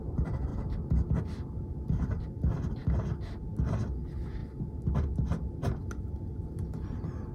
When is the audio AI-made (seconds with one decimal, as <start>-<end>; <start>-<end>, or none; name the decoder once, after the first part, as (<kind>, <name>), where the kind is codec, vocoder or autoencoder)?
none